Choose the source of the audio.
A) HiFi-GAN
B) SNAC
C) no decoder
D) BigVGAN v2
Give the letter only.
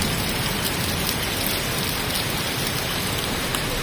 D